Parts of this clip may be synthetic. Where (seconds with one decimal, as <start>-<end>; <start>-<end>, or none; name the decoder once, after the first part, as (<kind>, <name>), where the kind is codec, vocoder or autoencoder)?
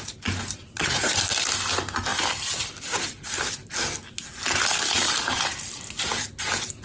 0.6-1.2 (vocoder, Vocos)